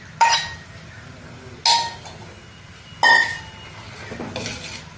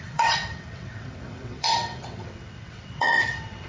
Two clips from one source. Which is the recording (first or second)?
first